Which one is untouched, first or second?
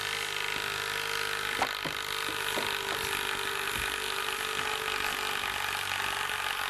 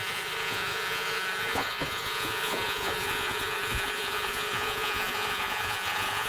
first